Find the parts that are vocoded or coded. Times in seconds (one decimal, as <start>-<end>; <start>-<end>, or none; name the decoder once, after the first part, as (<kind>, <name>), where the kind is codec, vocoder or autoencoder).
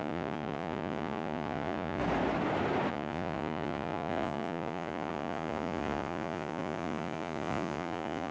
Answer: 0.0-2.0 (vocoder, Vocos); 2.9-8.3